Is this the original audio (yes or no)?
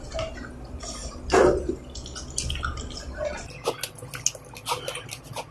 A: yes